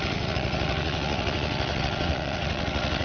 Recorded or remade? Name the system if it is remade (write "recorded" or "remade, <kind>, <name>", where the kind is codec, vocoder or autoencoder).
remade, vocoder, WaveNeXt